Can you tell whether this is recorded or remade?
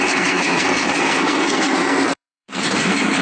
remade